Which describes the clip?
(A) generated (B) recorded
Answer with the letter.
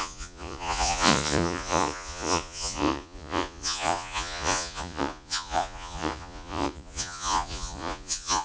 A